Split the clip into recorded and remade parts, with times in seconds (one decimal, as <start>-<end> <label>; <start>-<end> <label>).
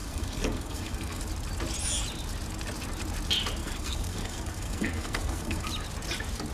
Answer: 0.0-1.2 remade; 1.2-3.6 recorded; 3.6-5.7 remade; 5.7-6.5 recorded